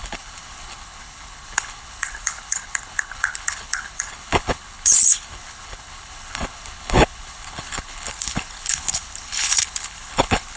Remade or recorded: remade